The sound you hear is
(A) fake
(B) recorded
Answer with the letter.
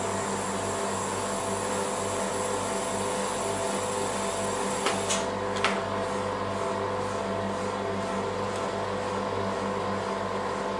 B